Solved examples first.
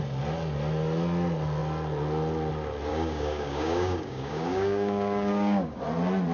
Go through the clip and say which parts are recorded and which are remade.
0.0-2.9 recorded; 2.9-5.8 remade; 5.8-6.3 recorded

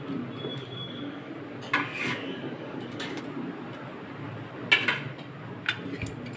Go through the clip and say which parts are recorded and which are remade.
0.0-0.5 recorded; 0.5-1.3 remade; 1.3-1.9 recorded; 1.9-3.2 remade; 3.2-6.4 recorded

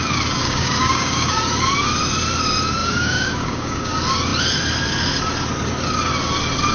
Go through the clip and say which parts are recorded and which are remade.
0.0-0.4 recorded; 0.4-1.4 remade; 1.4-2.8 recorded; 2.8-3.9 remade; 3.9-6.7 recorded

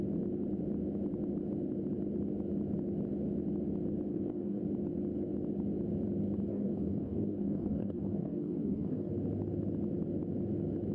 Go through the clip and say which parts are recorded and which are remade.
0.0-4.1 recorded; 4.1-4.6 remade; 4.6-6.5 recorded; 6.5-9.1 remade; 9.1-10.9 recorded

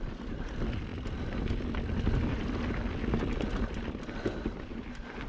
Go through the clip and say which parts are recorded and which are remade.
0.0-5.3 recorded

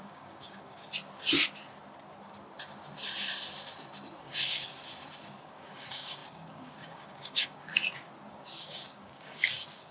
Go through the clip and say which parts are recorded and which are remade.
0.0-0.8 remade; 0.8-4.2 recorded; 4.2-4.8 remade; 4.8-5.4 recorded; 5.4-7.7 remade; 7.7-8.3 recorded; 8.3-9.9 remade

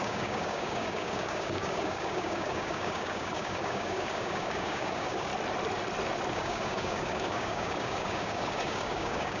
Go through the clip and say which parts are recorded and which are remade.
0.0-5.3 remade; 5.3-6.3 recorded; 6.3-9.4 remade

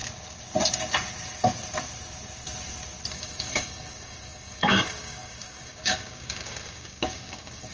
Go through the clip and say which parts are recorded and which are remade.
0.0-3.1 recorded; 3.1-7.7 remade